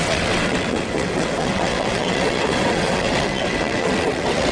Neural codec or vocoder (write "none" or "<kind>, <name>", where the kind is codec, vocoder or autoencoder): vocoder, WaveNeXt